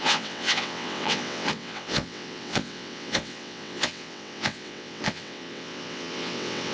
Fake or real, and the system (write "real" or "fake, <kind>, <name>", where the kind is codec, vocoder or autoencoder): fake, vocoder, WaveNeXt